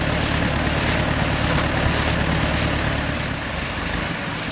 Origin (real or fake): real